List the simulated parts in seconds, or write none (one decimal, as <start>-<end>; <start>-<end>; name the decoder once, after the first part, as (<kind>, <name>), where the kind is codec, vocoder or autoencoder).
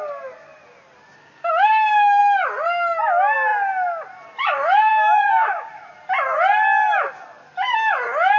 1.1-2.2 (codec, DAC); 4.9-5.7